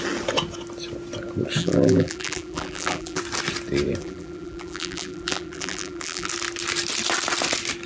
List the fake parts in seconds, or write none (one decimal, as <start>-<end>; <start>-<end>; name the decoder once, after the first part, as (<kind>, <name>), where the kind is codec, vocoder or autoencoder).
1.6-3.2 (vocoder, BigVGAN v2); 4.0-6.3